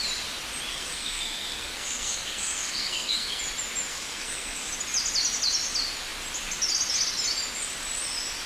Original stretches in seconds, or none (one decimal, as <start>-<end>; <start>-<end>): 0.0-0.7; 3.4-3.9; 4.7-8.5